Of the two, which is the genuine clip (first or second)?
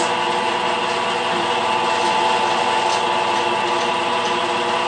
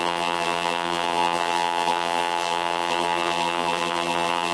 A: first